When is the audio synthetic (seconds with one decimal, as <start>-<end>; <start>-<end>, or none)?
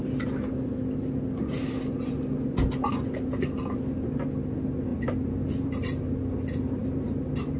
4.9-5.7; 6.8-7.6